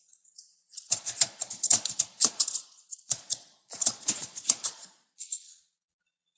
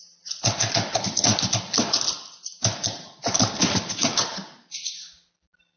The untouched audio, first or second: second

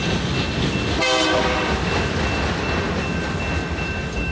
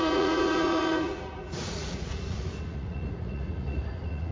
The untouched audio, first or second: first